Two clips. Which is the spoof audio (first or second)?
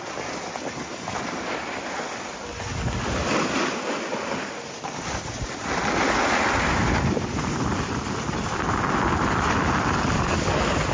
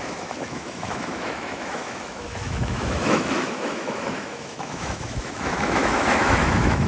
second